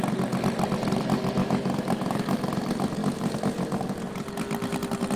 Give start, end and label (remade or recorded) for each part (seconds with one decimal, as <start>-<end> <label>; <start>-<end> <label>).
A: 0.0-1.4 recorded; 1.4-2.4 remade; 2.4-5.2 recorded